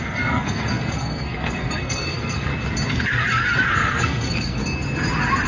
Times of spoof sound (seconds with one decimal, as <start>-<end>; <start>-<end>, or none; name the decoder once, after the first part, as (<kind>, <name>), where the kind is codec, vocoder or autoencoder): 0.0-2.5 (codec, SNAC); 3.7-4.6